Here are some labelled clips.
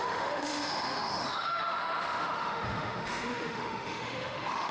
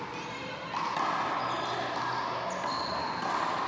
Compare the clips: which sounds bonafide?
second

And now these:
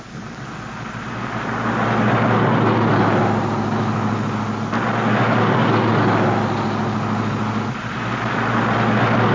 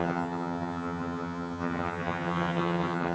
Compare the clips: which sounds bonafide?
first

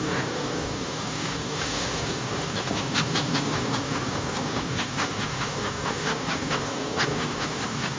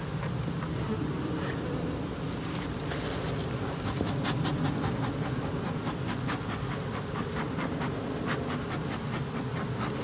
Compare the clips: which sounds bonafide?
second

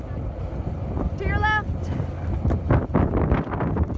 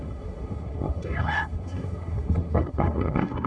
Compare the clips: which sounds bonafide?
first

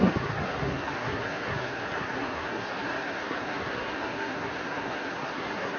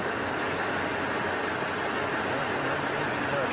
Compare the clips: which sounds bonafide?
second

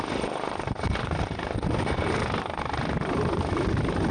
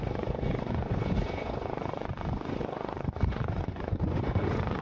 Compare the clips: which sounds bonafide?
first